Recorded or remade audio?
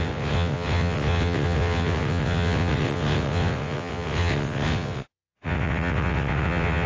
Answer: remade